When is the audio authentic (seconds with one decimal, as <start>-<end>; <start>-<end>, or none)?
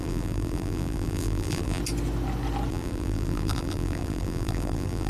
1.8-2.7